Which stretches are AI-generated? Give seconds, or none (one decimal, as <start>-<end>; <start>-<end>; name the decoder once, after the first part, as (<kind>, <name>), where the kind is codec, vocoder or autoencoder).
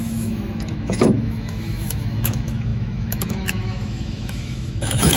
0.0-5.2 (autoencoder, DAC-VAE)